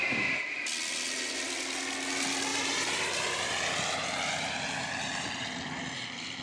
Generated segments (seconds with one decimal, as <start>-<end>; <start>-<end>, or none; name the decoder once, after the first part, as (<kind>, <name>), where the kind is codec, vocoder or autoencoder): 2.5-6.4 (vocoder, BigVGAN v2)